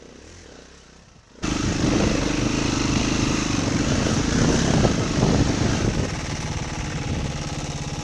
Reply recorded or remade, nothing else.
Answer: recorded